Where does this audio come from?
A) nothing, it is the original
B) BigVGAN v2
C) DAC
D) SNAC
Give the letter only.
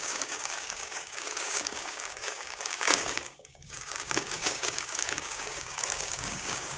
C